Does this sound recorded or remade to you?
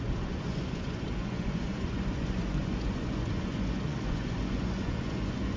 remade